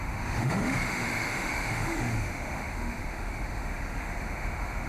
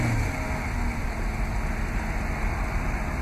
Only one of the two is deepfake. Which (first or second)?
first